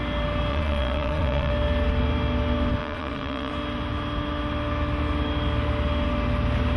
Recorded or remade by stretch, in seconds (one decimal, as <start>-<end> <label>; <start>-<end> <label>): 0.0-0.5 recorded; 0.5-1.5 remade; 1.5-2.8 recorded; 2.8-3.5 remade; 3.5-6.8 recorded